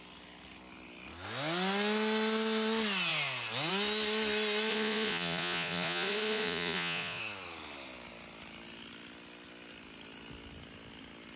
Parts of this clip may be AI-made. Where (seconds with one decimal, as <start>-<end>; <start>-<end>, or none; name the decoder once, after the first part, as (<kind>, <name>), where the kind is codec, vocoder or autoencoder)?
4.7-7.2 (vocoder, Vocos)